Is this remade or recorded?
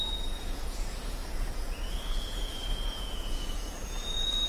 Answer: remade